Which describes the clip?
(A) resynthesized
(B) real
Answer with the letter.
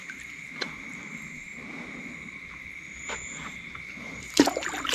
A